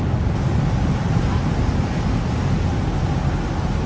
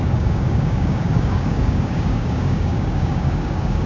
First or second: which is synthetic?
second